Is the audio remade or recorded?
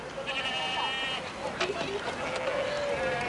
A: recorded